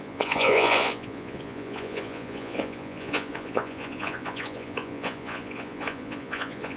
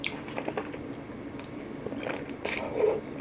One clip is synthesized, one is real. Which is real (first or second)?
second